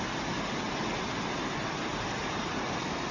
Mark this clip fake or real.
real